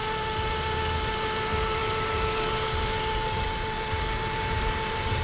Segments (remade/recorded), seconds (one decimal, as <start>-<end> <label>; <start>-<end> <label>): 0.0-5.2 recorded